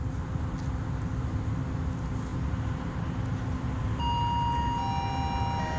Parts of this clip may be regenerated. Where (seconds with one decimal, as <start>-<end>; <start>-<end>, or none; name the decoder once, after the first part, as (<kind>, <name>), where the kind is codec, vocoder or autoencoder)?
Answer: none